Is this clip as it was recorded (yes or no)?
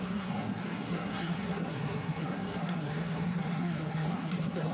no